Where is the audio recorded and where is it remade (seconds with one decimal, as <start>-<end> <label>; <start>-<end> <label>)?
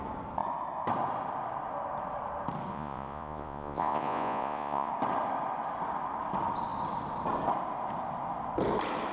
0.0-2.7 recorded; 2.7-4.9 remade; 4.9-9.1 recorded